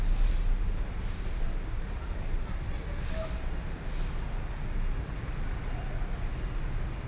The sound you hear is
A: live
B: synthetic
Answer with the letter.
A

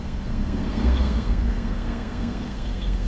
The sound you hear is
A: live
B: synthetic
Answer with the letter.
B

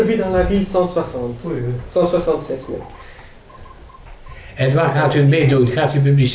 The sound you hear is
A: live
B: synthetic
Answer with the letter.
A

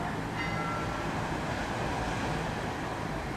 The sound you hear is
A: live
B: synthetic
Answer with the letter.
A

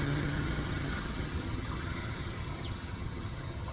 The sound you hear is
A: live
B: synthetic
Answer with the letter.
B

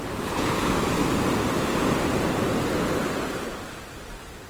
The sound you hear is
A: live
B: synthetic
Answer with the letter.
A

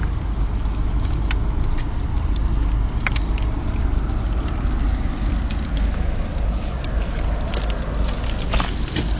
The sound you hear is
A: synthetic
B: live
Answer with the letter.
B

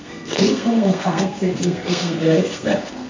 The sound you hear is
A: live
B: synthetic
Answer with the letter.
B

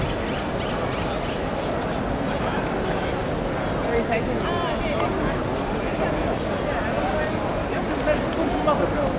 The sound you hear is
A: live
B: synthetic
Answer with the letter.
A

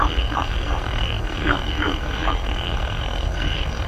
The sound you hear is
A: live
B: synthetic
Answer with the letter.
B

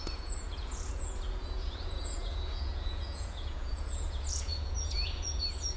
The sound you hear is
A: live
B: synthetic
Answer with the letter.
B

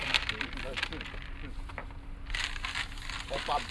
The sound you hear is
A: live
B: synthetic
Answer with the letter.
A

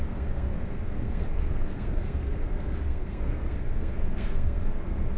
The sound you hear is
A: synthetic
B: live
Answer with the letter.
A